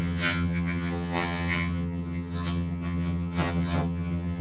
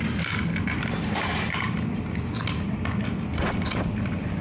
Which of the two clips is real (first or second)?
second